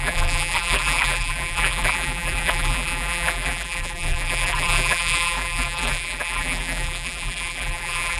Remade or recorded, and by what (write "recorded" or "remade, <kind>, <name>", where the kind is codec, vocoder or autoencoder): remade, vocoder, BigVGAN v2